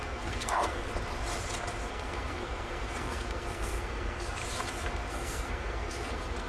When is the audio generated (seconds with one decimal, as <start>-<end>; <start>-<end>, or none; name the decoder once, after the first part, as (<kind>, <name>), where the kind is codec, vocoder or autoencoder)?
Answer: 0.0-0.9 (codec, SNAC); 1.9-4.4; 5.1-6.5